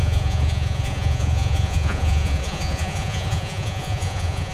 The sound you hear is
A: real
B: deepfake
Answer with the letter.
B